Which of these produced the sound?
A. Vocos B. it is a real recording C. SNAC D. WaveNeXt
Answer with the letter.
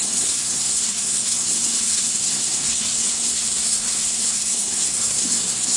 C